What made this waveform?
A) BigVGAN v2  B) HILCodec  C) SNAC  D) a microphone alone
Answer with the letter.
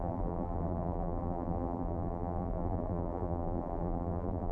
A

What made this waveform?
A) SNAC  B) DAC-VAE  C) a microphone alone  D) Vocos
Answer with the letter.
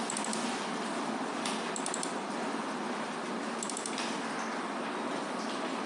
C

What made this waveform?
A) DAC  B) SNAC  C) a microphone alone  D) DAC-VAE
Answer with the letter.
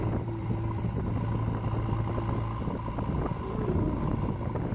C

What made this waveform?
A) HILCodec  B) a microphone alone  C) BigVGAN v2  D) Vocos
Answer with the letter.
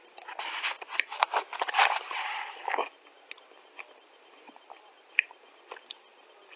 B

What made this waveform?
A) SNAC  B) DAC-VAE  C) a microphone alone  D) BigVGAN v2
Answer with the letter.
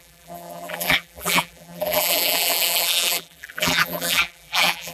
D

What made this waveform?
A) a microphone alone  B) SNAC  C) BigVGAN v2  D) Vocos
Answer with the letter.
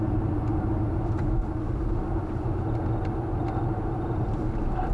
A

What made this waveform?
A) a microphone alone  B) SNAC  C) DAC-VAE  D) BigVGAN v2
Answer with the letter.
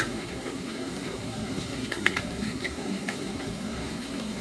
B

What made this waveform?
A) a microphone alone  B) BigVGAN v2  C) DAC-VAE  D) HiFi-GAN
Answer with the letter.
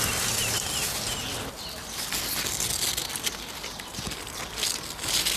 A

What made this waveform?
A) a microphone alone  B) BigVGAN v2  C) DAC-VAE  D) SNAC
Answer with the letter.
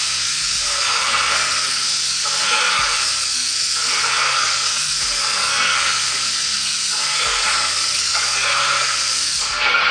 D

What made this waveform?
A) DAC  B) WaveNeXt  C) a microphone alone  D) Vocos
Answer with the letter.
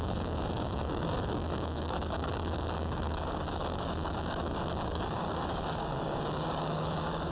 A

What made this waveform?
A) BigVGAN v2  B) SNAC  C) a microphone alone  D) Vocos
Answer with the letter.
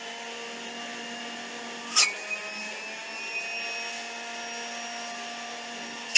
C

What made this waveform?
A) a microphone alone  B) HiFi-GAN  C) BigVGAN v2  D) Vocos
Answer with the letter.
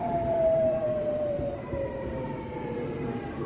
C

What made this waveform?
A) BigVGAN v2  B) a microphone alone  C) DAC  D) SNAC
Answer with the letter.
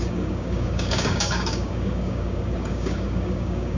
C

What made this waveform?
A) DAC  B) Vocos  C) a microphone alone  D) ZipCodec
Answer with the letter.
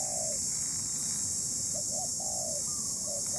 C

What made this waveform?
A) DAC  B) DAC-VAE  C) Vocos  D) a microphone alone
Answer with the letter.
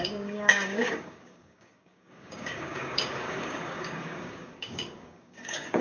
A